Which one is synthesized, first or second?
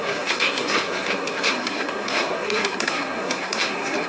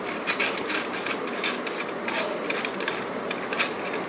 first